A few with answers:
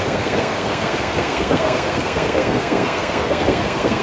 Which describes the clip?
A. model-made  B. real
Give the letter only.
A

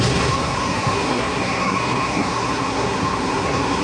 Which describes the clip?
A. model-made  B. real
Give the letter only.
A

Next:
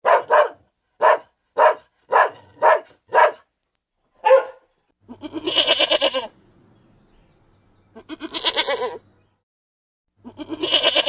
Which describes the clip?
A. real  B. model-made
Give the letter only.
A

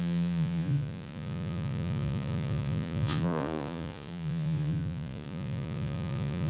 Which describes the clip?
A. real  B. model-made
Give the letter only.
B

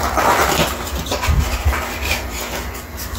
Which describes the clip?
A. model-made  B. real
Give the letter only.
A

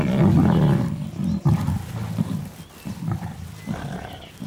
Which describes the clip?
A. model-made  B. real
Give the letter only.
B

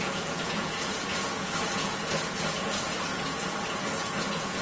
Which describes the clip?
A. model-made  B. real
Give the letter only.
A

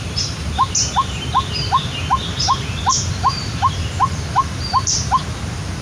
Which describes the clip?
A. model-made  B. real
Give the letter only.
A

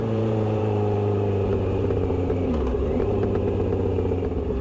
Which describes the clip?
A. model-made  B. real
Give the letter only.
A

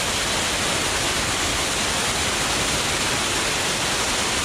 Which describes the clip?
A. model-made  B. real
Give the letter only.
B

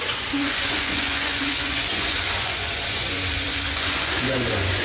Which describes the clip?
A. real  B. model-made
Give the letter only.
B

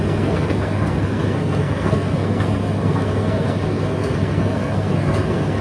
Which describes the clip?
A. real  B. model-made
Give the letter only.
B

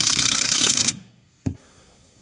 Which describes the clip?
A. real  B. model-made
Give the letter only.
B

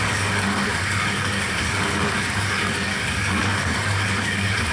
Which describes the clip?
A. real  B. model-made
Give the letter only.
B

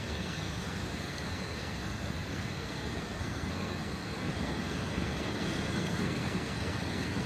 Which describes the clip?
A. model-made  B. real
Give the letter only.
A